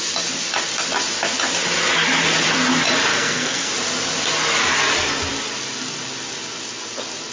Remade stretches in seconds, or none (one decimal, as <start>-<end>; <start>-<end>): 3.1-3.7